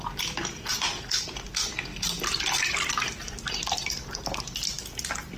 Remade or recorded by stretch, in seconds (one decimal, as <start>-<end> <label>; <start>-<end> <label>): 0.0-5.4 recorded